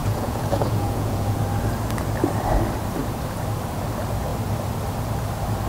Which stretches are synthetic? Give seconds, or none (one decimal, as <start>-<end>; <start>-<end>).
0.0-1.4